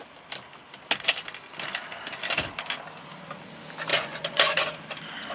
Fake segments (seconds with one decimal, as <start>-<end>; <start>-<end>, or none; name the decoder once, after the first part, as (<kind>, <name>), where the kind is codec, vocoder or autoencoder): 3.9-4.7 (vocoder, Vocos)